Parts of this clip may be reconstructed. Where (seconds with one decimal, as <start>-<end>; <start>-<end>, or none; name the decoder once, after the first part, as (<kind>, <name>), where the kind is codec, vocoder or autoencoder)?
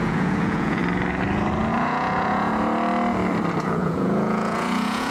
0.0-0.8 (vocoder, Vocos); 1.7-2.5; 3.6-5.1